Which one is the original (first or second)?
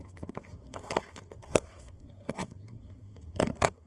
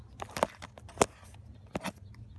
second